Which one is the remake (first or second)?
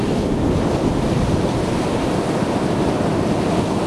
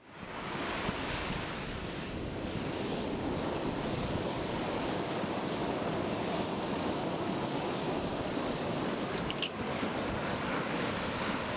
second